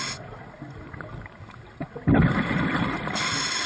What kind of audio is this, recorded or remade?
recorded